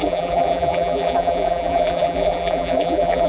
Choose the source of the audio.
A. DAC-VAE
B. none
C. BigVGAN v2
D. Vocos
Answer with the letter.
C